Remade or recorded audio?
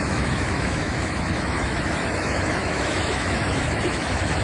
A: remade